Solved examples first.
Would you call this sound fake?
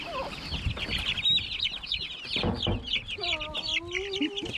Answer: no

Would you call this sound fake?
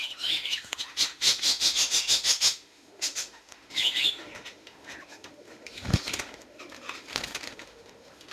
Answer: yes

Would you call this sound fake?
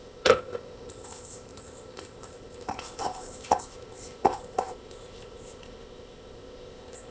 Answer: yes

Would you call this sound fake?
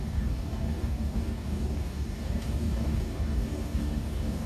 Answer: yes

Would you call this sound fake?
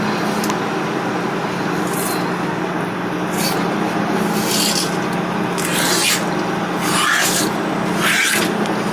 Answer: no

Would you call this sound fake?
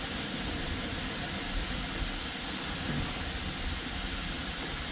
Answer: no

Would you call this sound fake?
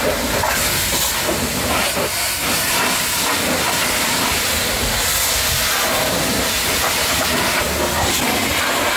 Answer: no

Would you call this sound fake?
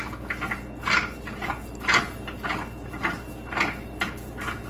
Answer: no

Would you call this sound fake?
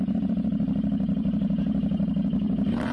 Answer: no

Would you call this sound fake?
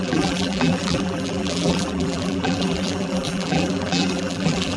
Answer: yes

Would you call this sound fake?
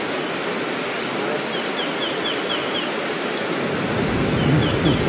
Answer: no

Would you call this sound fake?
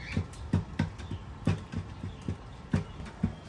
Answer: no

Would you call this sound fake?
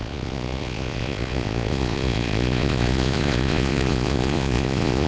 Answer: yes